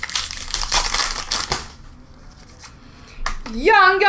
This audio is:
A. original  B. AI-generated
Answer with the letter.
A